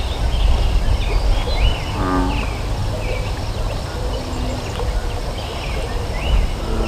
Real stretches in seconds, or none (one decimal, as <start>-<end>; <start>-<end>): 0.0-6.9